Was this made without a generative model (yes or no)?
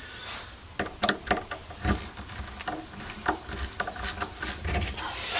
yes